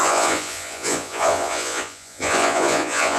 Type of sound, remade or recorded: remade